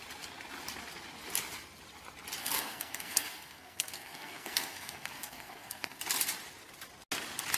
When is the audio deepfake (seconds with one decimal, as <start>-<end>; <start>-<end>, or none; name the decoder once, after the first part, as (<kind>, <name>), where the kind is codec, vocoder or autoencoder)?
2.4-6.0 (codec, SNAC)